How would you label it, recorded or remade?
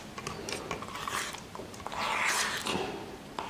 recorded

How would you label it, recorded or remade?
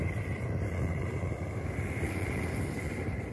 remade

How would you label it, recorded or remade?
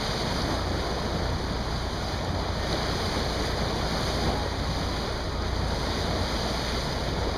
recorded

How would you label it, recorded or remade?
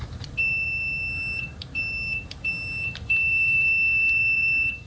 remade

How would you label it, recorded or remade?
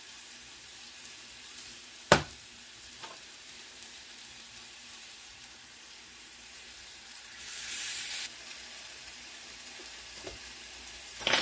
remade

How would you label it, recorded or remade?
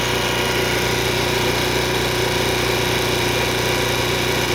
recorded